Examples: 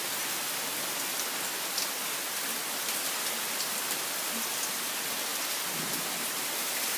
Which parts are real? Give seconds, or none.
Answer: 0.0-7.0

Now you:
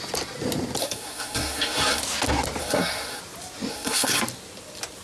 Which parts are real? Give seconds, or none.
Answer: 0.0-0.8; 2.0-2.6; 3.2-3.7; 4.2-5.0

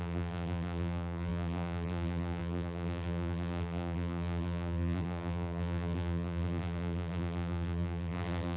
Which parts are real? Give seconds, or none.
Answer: none

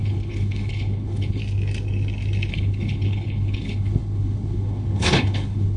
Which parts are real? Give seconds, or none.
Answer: 1.4-2.5

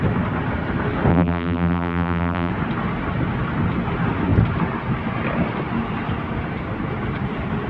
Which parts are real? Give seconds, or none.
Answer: 0.0-1.1; 2.5-7.7

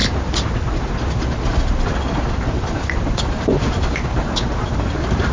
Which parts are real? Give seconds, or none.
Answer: 0.0-3.2

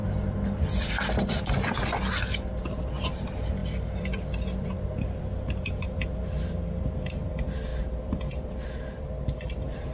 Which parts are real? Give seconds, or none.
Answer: 0.0-1.1